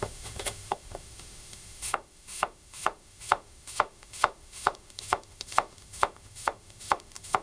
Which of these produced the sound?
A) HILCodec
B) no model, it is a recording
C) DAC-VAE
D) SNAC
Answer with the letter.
C